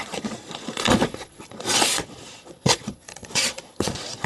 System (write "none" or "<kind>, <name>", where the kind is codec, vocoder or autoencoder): vocoder, Vocos